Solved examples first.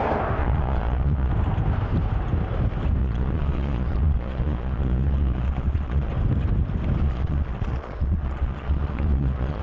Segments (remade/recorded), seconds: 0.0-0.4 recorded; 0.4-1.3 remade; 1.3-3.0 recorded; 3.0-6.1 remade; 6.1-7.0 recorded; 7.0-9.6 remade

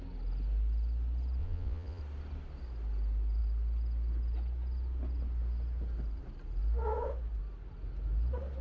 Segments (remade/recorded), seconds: 0.0-1.4 recorded; 1.4-2.0 remade; 2.0-8.6 recorded

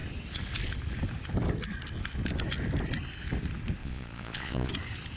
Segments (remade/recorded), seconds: 0.0-3.8 recorded; 3.8-4.7 remade; 4.7-5.2 recorded